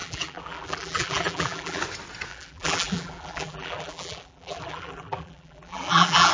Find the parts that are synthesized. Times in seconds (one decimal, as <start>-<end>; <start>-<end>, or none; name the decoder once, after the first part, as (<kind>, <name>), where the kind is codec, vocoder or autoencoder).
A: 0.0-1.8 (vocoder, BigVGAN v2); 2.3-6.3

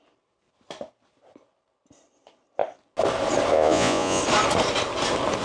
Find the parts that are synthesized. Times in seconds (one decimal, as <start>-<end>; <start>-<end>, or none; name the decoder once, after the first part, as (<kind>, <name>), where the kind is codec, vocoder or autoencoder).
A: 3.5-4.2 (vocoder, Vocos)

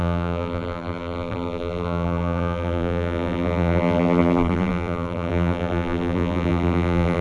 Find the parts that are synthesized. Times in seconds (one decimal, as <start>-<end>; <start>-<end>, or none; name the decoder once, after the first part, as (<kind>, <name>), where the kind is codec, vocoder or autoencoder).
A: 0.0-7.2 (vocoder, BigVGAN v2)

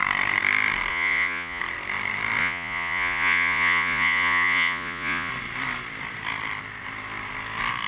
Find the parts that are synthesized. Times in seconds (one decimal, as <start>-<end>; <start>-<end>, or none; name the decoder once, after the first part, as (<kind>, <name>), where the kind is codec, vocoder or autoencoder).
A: 0.9-1.6 (vocoder, Vocos); 2.4-5.3

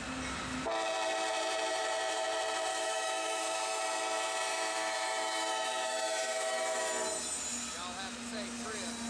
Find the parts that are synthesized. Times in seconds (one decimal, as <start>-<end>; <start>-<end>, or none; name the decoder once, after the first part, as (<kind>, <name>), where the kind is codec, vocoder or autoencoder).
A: 2.7-3.8 (autoencoder, DAC-VAE); 4.5-6.8

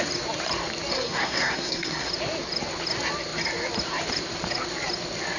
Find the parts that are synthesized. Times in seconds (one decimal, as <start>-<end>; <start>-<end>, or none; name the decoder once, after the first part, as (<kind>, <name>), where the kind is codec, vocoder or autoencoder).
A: 0.9-2.1 (codec, SNAC)